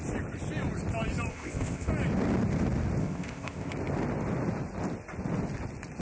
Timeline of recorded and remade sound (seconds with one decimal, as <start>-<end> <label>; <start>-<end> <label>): 0.0-1.3 recorded; 1.3-1.9 remade; 1.9-3.0 recorded; 3.0-3.7 remade; 3.7-6.0 recorded